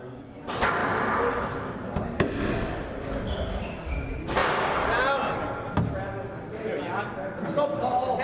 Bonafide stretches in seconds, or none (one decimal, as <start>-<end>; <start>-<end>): 0.8-2.4; 4.4-7.4